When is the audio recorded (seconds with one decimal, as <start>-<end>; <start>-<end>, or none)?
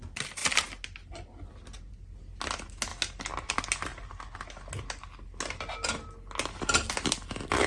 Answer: 0.0-7.7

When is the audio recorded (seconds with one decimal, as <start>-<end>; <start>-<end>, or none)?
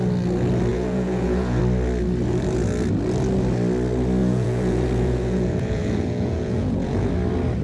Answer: 0.0-0.7; 1.6-4.2; 7.1-7.6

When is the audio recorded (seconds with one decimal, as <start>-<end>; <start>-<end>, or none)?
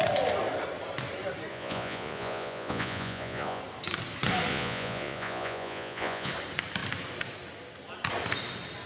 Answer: 0.0-1.5; 3.6-4.5; 6.3-8.9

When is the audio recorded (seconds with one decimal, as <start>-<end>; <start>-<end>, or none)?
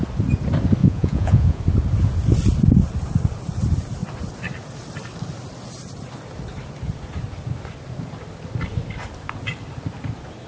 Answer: 0.0-0.8; 1.6-10.5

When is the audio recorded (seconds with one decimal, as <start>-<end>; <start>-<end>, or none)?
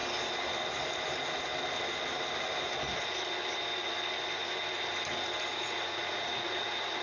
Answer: 0.0-5.5